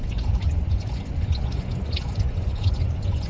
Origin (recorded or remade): remade